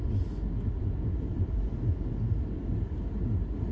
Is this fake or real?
real